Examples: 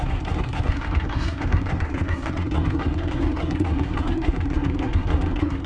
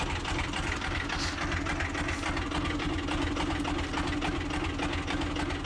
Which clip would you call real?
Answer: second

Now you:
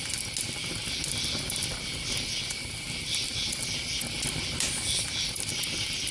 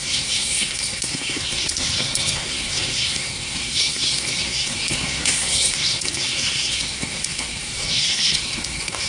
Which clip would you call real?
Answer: first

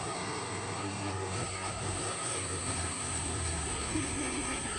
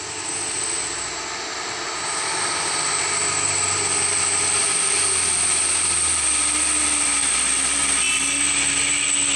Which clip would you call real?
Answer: second